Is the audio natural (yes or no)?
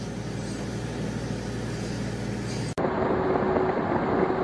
yes